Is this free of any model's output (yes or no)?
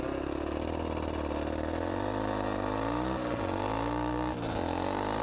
yes